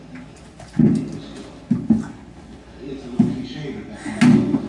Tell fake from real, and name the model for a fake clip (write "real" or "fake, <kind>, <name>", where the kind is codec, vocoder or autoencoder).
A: real